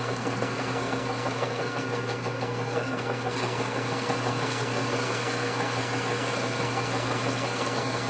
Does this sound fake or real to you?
fake